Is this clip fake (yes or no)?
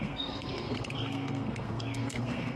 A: yes